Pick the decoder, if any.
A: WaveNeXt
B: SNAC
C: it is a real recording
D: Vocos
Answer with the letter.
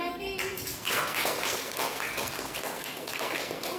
B